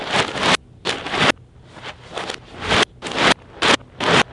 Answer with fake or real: real